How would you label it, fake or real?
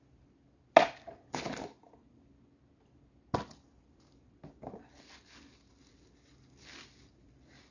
real